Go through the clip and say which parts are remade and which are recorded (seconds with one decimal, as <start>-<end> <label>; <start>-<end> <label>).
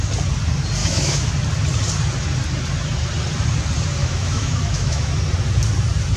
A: 0.0-0.8 recorded; 0.8-1.3 remade; 1.3-4.0 recorded; 4.0-5.1 remade; 5.1-6.2 recorded